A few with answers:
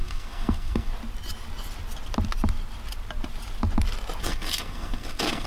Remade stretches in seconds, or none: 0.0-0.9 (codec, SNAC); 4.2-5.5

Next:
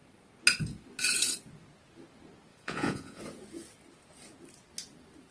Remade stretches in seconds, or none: 2.5-3.2 (vocoder, Vocos)